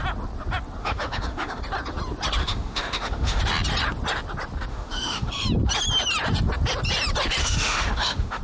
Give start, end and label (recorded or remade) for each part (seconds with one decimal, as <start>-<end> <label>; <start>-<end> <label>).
0.0-0.8 recorded; 0.8-1.6 remade; 1.6-2.4 recorded; 2.4-3.4 remade; 3.4-4.7 recorded; 4.7-5.3 remade; 5.3-7.4 recorded; 7.4-8.4 remade